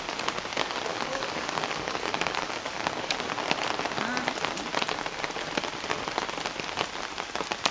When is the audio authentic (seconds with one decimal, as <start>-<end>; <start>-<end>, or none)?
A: 0.0-0.9; 3.3-7.7